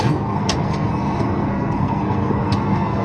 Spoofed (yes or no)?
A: yes